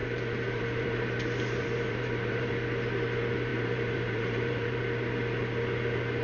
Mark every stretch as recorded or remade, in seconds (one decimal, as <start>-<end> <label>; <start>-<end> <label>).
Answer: 0.0-2.5 remade; 2.5-3.5 recorded; 3.5-4.8 remade; 4.8-6.2 recorded